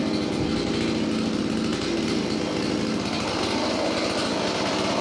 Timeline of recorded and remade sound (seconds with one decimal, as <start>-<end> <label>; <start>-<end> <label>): 0.0-5.0 recorded